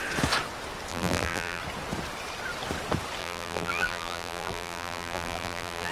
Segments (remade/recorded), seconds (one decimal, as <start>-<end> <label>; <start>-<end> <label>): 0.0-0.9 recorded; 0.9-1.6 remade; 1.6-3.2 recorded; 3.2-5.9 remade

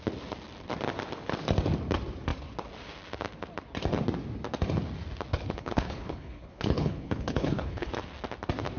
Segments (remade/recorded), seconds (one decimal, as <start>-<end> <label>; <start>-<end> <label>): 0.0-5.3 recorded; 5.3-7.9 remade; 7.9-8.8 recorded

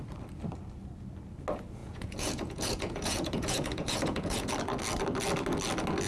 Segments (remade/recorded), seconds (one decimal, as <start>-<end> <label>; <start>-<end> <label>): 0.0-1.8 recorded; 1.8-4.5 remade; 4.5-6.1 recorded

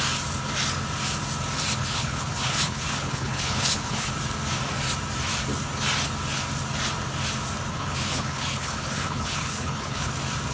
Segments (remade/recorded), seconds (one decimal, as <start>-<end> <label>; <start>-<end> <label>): 0.0-1.8 recorded; 1.8-4.1 remade; 4.1-7.7 recorded; 7.7-10.1 remade; 10.1-10.5 recorded